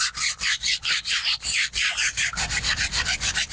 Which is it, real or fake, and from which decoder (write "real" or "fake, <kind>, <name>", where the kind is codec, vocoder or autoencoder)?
fake, vocoder, BigVGAN v2